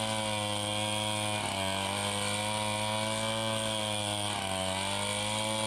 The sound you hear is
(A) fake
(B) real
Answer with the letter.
B